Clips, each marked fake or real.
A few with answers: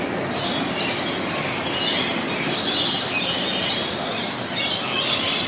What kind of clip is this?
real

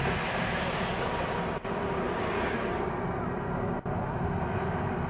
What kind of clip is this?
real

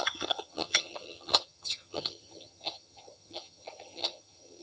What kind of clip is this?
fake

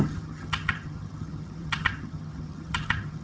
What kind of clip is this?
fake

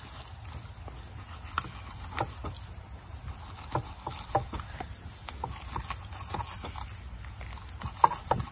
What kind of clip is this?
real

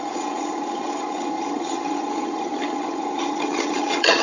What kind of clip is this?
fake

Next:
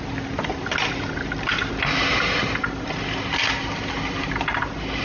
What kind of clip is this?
real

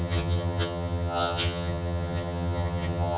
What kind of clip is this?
fake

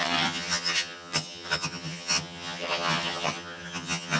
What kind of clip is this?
fake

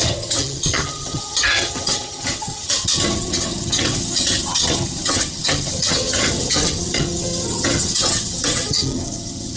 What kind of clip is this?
fake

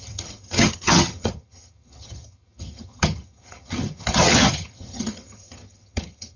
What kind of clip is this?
fake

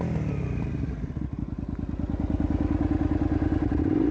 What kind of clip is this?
real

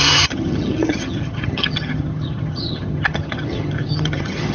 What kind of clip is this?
fake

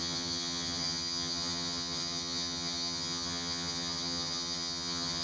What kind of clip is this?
fake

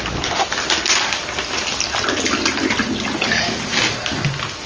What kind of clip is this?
real